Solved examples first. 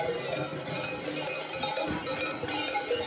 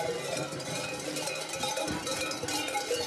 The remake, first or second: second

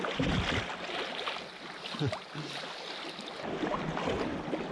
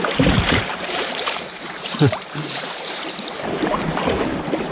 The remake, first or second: second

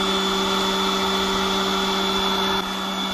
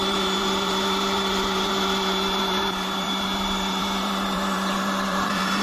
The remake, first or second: second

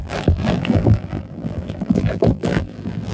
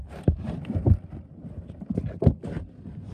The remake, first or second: first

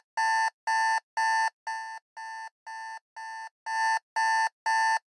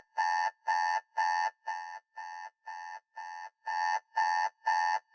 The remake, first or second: second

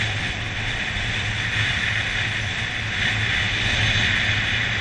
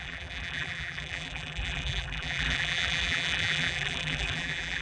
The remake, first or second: second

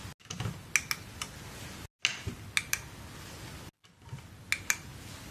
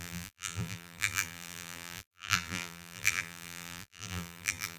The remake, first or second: second